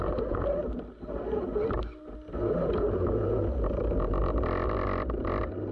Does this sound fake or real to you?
real